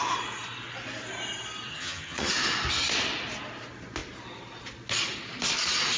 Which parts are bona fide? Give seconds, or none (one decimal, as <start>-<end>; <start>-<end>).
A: 0.0-1.7; 2.3-6.0